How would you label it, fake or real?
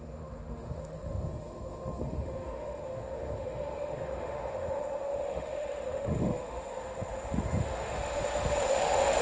fake